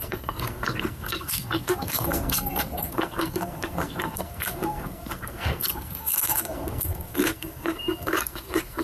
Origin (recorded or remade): remade